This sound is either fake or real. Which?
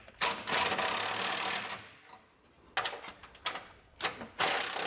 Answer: real